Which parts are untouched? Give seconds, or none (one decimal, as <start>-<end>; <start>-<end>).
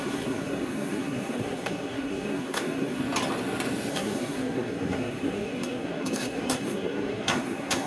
3.0-3.9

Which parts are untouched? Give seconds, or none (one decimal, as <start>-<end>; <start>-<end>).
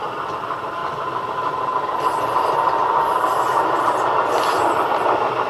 0.0-5.5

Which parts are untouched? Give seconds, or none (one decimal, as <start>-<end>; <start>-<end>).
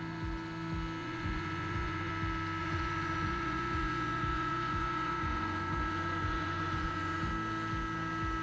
0.0-1.0; 2.1-2.6; 7.3-8.4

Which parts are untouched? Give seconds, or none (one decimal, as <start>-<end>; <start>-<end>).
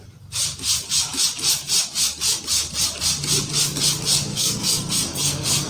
0.0-4.3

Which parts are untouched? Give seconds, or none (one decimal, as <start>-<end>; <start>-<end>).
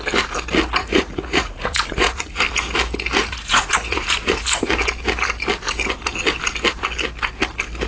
0.0-0.8; 2.4-3.2; 4.7-7.9